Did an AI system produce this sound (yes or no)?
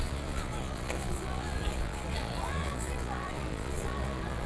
yes